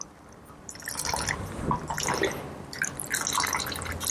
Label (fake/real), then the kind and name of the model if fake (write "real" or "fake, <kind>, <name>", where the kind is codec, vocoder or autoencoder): real